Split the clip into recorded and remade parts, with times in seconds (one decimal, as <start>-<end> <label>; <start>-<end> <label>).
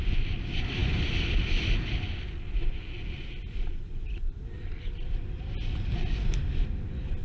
0.0-7.2 recorded